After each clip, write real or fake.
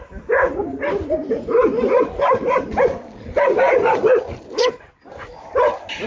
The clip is real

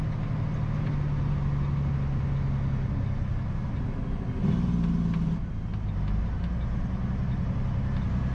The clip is real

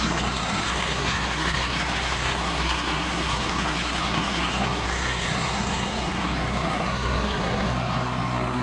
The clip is fake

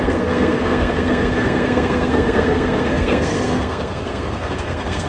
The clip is fake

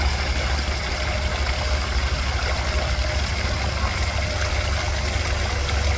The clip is real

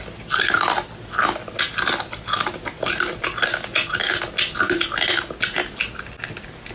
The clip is real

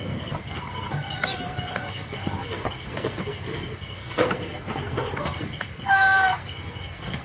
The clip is fake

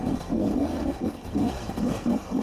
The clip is fake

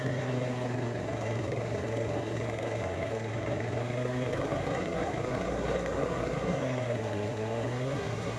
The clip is fake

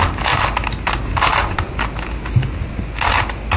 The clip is real